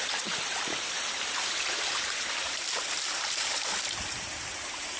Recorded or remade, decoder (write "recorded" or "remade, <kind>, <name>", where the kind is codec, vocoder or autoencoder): remade, vocoder, BigVGAN v2